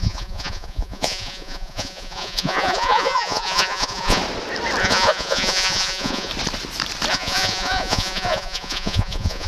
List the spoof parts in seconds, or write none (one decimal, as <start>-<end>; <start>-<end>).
0.0-4.2; 4.8-6.3; 7.1-9.5